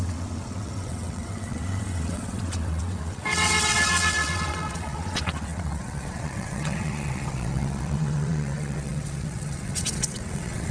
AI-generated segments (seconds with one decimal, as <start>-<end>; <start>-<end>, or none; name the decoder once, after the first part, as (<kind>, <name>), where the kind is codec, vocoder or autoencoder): 0.0-10.7 (vocoder, WaveNeXt)